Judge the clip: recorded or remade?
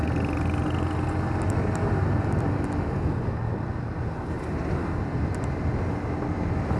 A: recorded